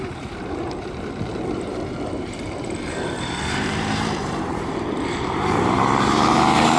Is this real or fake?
fake